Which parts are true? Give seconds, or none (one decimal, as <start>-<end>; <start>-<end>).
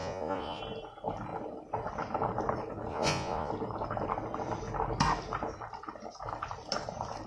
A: 0.6-2.9; 3.5-7.3